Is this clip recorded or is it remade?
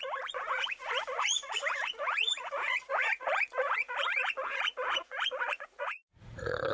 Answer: remade